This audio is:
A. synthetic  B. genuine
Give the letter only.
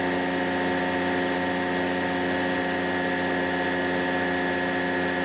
B